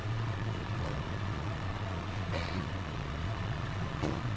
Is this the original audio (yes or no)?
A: no